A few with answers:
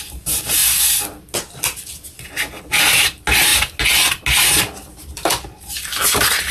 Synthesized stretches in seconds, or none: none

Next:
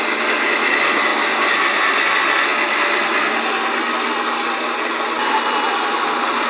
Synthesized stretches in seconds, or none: none